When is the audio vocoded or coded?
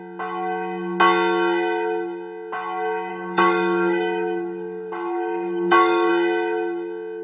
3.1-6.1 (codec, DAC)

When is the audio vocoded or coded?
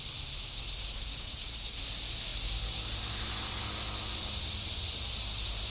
1.1-1.7 (codec, DAC)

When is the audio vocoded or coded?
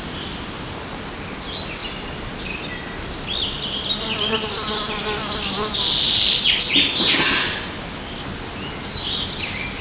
none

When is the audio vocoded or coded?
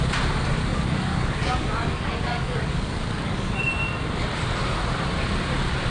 0.7-3.7 (codec, DAC)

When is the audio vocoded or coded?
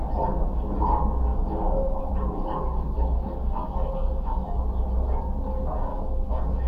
1.3-4.6 (codec, DAC); 5.9-6.7